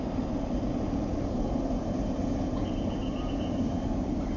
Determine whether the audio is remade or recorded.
recorded